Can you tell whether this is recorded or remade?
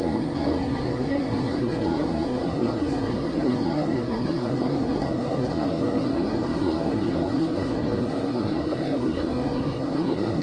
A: remade